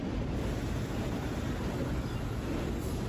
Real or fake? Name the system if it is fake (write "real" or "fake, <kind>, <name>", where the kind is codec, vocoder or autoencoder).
real